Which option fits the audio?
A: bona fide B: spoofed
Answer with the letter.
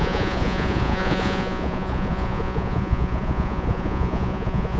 B